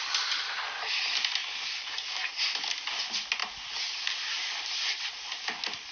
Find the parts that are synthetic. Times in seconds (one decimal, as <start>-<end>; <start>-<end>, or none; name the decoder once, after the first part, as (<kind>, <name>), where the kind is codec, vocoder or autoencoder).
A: none